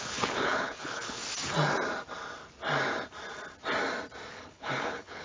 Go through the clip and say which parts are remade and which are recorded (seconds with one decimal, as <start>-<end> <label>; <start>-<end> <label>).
0.0-1.2 remade; 1.2-4.3 recorded; 4.3-5.2 remade